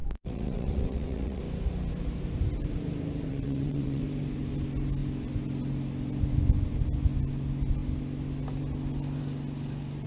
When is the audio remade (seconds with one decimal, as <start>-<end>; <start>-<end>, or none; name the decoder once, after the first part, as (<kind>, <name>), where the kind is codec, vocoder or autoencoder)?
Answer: 0.0-1.4 (vocoder, WaveNeXt); 3.3-4.0